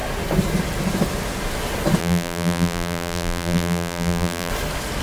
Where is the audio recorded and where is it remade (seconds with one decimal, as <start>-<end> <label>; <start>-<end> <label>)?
0.0-2.0 recorded; 2.0-4.5 remade; 4.5-5.0 recorded